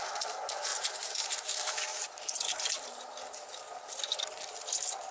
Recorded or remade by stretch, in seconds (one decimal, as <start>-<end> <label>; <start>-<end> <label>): 0.0-0.7 recorded; 0.7-3.8 remade; 3.8-5.1 recorded